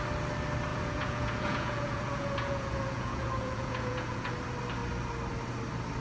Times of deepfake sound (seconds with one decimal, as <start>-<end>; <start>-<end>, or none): 0.7-4.3